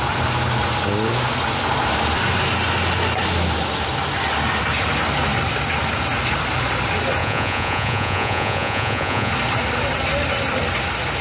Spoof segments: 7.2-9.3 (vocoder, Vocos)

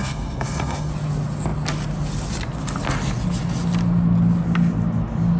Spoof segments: 0.0-0.9 (codec, SNAC)

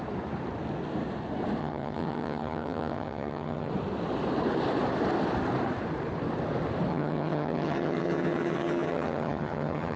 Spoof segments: 1.6-3.7 (vocoder, HiFi-GAN); 6.9-10.0

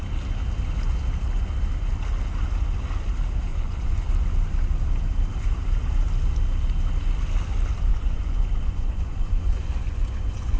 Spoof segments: 3.5-4.0 (vocoder, Vocos); 7.9-10.6

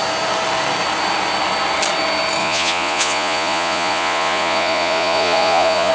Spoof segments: 2.4-5.9 (vocoder, Vocos)

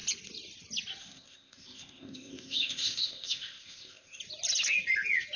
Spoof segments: 1.0-4.2 (codec, ZipCodec)

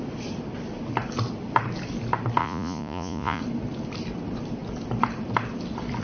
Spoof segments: 2.4-3.4 (vocoder, Vocos)

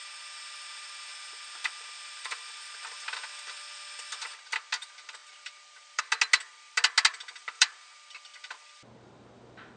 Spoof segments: 5.2-6.0 (vocoder, BigVGAN v2); 7.4-7.9